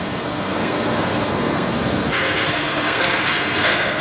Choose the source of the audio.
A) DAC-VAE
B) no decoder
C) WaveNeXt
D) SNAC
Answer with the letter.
D